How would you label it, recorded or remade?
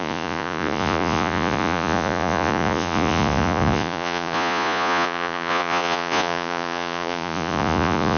remade